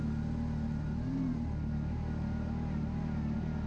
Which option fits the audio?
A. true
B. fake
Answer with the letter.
A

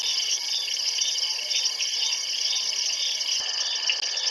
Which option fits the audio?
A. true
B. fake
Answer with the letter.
A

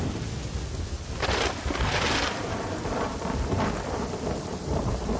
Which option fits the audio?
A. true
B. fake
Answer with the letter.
A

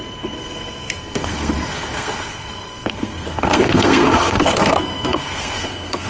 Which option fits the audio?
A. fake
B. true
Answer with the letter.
A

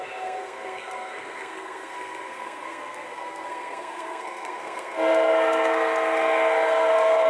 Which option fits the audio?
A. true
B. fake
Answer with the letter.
B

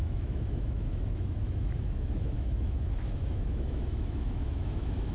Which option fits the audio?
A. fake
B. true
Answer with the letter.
A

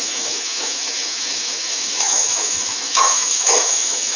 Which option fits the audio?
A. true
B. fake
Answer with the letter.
B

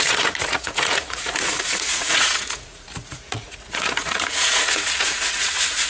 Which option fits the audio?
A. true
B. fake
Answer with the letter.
B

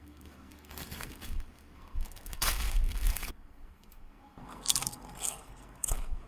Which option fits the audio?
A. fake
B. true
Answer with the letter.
A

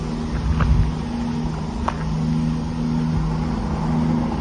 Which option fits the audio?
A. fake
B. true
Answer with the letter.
B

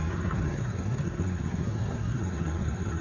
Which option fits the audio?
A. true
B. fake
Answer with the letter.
B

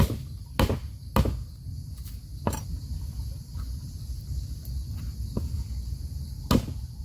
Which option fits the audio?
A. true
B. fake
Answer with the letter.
A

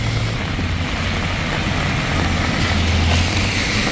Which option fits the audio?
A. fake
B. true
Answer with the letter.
B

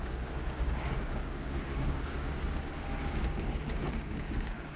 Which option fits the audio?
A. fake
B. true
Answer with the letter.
A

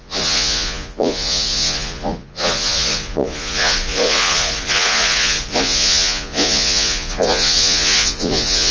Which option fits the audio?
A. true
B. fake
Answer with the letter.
B